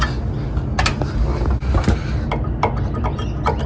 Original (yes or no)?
yes